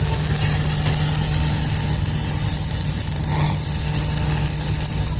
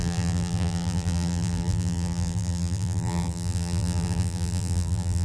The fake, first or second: second